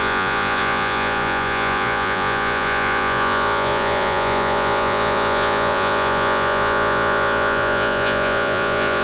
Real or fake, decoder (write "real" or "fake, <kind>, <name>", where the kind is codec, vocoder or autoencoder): fake, vocoder, Vocos